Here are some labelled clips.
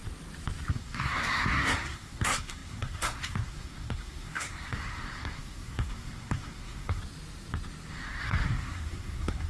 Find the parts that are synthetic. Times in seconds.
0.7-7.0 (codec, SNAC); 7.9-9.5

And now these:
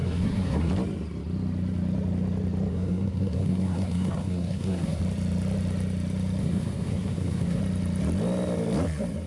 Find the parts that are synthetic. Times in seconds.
0.0-0.7 (codec, SNAC); 2.7-5.0; 6.4-7.6

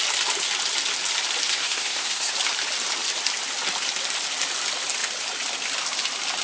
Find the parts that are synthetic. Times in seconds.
1.5-2.3 (codec, SNAC)

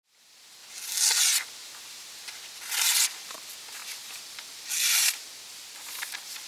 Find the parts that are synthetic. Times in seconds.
none

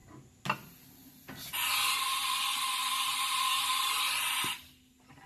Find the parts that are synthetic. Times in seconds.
none